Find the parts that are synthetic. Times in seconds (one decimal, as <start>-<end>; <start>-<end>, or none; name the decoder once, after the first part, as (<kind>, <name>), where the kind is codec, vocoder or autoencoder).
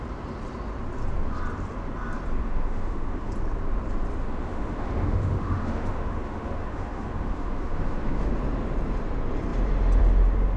2.4-3.3 (autoencoder, DAC-VAE); 4.2-8.3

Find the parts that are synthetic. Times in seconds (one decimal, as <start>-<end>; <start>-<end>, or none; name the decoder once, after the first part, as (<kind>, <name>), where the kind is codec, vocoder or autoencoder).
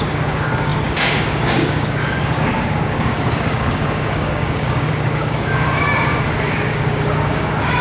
0.0-7.8 (codec, DAC)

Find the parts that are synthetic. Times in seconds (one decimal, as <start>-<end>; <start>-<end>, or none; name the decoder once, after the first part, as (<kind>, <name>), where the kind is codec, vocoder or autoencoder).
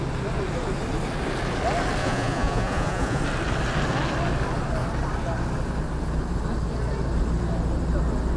2.0-3.2 (vocoder, Vocos)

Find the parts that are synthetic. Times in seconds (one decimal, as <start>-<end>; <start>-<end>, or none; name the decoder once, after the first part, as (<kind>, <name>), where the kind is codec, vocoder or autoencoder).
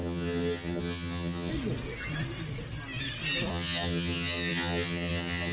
0.0-1.5 (vocoder, HiFi-GAN); 3.5-5.5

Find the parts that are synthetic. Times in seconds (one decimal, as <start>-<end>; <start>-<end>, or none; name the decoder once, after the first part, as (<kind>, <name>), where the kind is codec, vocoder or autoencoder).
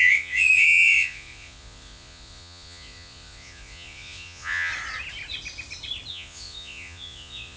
0.0-4.7 (vocoder, Vocos); 6.1-7.6